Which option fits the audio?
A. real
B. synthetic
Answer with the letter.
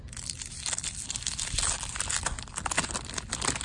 A